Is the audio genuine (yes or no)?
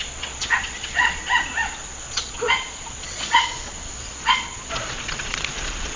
no